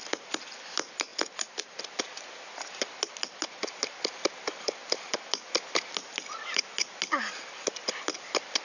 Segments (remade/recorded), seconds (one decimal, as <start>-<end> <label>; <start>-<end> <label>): 0.0-8.6 recorded